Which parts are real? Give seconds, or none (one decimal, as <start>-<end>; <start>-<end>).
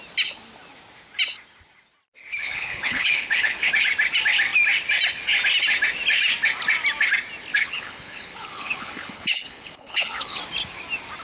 0.0-2.4; 3.7-7.5; 10.4-11.2